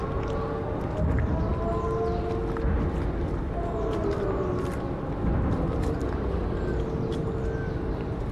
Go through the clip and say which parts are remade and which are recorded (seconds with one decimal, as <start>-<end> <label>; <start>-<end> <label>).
0.0-8.3 recorded